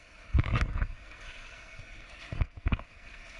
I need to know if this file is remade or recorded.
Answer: remade